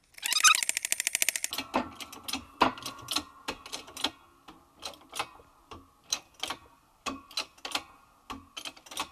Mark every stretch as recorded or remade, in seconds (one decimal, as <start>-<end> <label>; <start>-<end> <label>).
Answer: 0.0-9.1 recorded